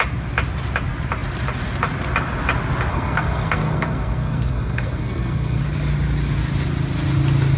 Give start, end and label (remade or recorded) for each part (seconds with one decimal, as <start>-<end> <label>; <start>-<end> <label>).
0.0-2.9 recorded; 2.9-5.6 remade; 5.6-7.6 recorded